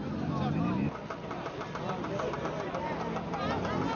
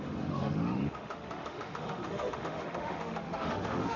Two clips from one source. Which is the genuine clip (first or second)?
first